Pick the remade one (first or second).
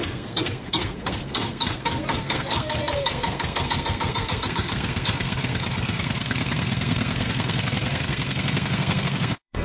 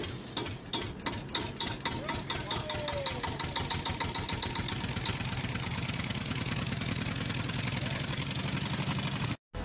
first